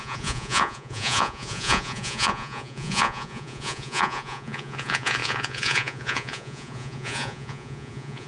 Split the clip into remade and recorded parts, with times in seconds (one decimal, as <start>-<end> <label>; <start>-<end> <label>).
0.0-8.3 remade